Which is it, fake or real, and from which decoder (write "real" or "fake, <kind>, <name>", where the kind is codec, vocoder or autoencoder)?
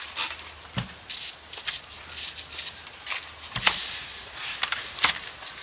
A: real